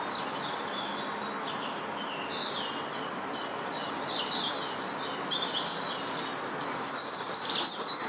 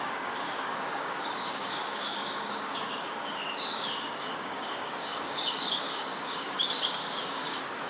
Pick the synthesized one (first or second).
second